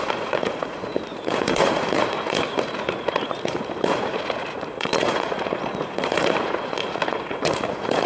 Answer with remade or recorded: remade